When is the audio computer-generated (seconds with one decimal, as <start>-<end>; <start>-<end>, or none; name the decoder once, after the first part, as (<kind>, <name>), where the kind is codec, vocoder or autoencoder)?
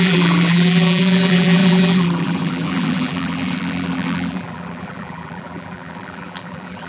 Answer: 0.0-6.9 (vocoder, BigVGAN v2)